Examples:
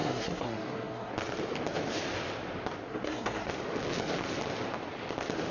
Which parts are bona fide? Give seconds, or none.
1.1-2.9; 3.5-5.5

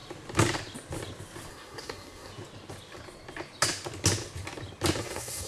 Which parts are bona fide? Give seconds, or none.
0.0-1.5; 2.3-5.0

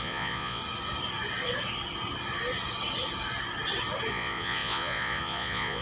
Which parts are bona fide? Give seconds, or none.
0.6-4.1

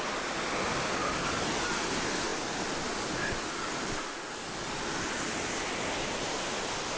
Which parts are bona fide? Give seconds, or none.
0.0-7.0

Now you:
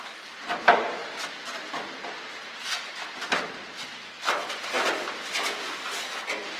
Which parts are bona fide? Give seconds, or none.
1.0-1.6

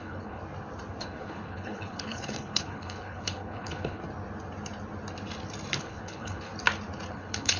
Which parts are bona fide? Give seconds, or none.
0.4-1.0; 4.0-5.8; 6.5-7.1